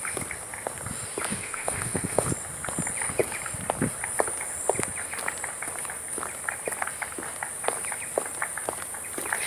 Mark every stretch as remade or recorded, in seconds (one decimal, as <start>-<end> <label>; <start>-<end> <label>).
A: 0.0-1.3 recorded; 1.3-2.3 remade; 2.3-9.5 recorded